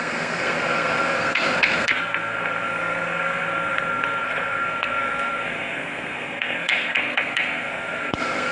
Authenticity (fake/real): fake